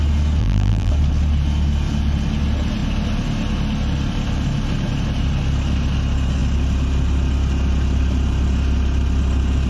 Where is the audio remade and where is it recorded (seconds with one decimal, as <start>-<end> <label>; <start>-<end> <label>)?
0.0-0.4 recorded; 0.4-0.9 remade; 0.9-9.7 recorded